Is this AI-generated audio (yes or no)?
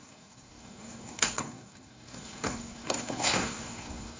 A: yes